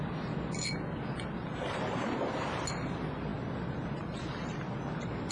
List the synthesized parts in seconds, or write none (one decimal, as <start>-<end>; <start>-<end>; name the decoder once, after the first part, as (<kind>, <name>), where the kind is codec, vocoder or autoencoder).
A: none